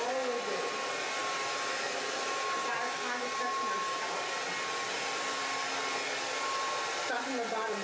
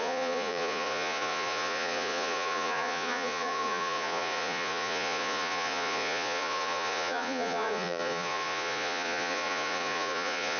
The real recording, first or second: first